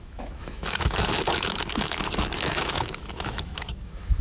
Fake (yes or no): yes